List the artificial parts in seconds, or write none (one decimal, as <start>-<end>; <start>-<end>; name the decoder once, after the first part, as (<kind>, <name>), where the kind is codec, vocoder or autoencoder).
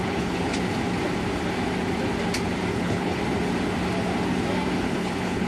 0.0-0.5 (codec, HILCodec); 2.7-3.2; 4.8-5.5